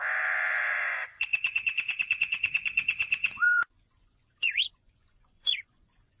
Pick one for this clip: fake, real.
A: fake